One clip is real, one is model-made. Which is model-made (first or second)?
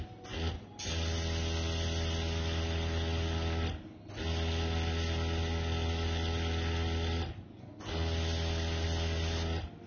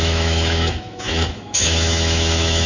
second